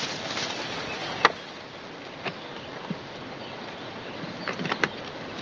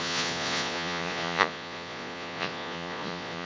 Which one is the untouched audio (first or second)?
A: first